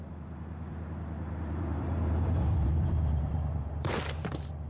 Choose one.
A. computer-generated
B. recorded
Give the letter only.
A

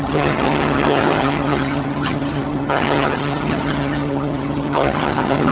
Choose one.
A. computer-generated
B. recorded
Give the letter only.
A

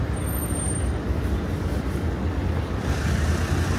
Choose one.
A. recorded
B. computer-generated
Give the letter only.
A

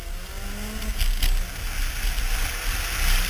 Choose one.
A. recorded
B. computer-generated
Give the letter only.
A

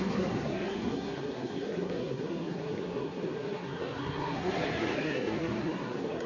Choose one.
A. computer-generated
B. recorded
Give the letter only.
A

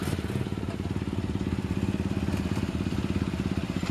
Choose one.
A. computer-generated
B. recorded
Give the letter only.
B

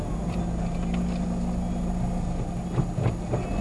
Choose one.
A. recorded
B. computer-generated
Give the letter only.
A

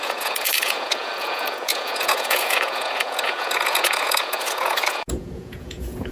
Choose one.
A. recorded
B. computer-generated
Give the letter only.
B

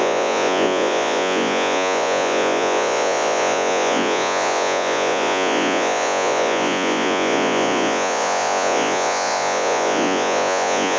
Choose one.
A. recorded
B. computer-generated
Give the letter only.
B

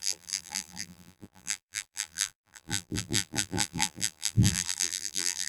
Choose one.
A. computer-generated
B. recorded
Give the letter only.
A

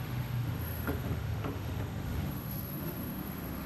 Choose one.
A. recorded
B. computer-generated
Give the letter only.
B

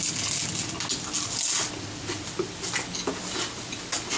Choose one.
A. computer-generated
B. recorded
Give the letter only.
B